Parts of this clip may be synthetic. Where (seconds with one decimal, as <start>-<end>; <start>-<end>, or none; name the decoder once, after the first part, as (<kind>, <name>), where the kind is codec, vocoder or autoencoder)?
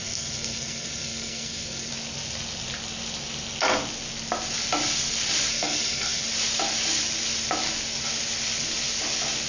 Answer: 0.0-1.9 (codec, SNAC); 5.5-6.2